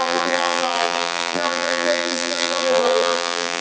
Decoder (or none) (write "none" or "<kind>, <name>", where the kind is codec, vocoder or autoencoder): vocoder, BigVGAN v2